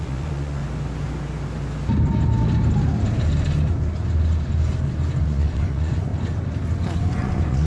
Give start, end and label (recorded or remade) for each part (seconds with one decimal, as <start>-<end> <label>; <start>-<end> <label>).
0.0-0.6 remade; 0.6-5.2 recorded; 5.2-6.1 remade; 6.1-7.0 recorded; 7.0-7.7 remade